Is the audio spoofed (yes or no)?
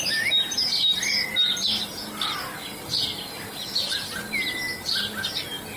no